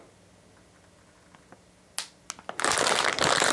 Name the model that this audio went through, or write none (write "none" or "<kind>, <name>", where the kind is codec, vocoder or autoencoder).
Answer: none